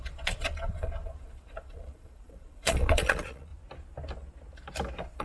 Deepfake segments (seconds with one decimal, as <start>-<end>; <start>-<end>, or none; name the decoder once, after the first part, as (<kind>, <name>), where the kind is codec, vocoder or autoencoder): 0.0-3.5 (vocoder, Vocos)

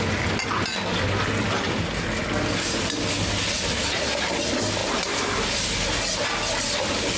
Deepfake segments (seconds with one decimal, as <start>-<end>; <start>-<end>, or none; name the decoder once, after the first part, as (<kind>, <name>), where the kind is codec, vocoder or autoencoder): none

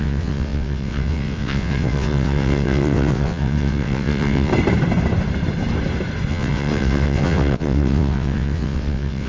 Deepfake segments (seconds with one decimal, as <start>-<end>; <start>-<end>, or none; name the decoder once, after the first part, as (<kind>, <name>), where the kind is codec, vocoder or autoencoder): 0.0-4.5 (vocoder, WaveNeXt); 6.3-9.3

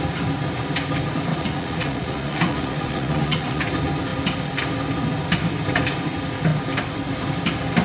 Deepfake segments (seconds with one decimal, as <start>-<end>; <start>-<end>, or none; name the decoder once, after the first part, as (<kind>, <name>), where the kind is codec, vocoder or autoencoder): 1.3-3.6 (vocoder, Vocos)